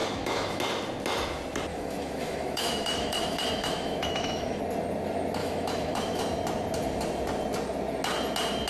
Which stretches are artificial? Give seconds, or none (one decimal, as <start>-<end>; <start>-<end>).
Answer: 0.0-0.6; 1.7-4.6; 5.4-6.2